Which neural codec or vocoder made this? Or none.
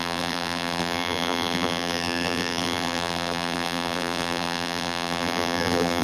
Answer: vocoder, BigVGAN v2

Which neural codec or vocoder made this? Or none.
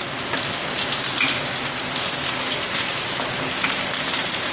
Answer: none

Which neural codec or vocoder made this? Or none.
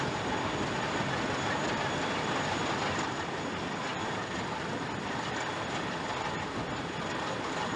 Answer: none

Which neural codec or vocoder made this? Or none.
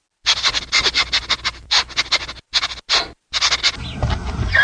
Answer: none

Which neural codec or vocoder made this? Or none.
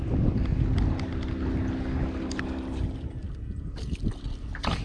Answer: none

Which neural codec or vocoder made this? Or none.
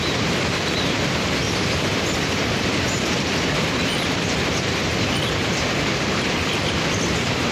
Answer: vocoder, BigVGAN v2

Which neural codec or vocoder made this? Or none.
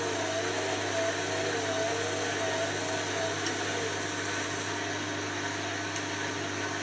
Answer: none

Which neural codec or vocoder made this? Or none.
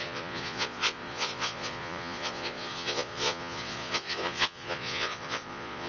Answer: vocoder, Vocos